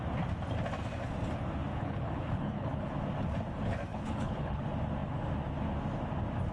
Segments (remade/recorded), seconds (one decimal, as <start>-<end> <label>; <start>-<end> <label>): 0.0-1.7 recorded; 1.7-2.8 remade; 2.8-3.9 recorded; 3.9-4.6 remade; 4.6-6.5 recorded